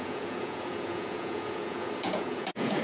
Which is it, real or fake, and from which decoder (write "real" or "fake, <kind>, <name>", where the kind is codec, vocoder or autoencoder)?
fake, vocoder, Vocos